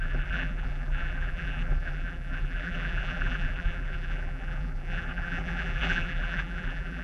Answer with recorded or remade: remade